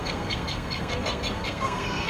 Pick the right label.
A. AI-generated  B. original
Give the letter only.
A